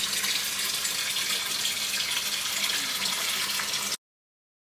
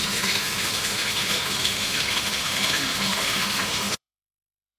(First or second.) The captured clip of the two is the first